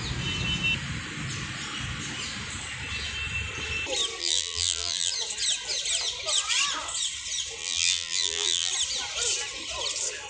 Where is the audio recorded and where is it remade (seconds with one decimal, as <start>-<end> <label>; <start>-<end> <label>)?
0.0-4.2 recorded; 4.2-5.1 remade; 5.1-7.6 recorded; 7.6-8.7 remade; 8.7-10.3 recorded